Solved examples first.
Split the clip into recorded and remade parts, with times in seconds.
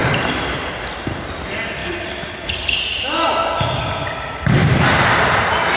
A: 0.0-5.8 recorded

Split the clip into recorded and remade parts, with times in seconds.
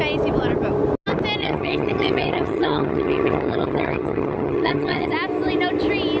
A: 0.0-1.4 recorded; 1.4-5.1 remade; 5.1-6.2 recorded